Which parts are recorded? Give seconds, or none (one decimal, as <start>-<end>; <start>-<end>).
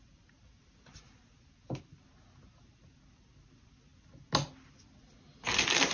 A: 0.0-5.9